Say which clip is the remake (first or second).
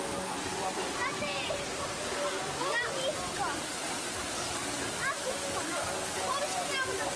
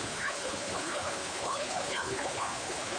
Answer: second